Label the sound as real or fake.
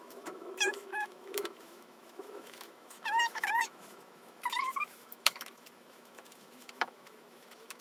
fake